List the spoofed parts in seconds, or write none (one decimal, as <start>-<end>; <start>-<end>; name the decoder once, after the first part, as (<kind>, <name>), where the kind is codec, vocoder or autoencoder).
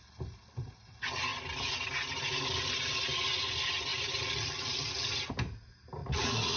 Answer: 6.0-6.6 (vocoder, Vocos)